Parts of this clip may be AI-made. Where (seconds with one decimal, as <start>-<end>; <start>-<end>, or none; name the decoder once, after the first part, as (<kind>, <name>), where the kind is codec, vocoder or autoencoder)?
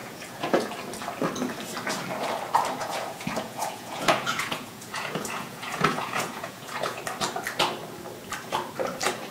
0.0-0.7 (vocoder, Vocos); 2.8-7.0